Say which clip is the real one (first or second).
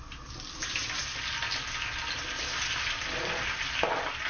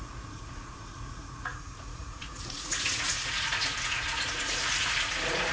first